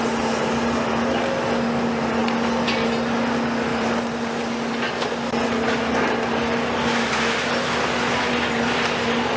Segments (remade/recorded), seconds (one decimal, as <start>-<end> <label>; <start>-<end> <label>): 0.0-3.7 recorded; 3.7-4.7 remade; 4.7-9.4 recorded